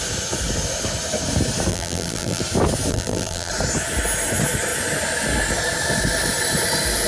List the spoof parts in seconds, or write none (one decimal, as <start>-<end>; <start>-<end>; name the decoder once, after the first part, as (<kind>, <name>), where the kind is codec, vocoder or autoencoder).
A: 1.7-2.4 (vocoder, BigVGAN v2); 2.9-3.5